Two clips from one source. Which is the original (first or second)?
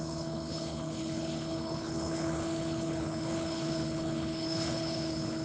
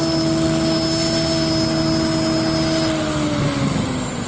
second